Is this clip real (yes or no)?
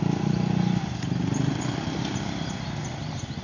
yes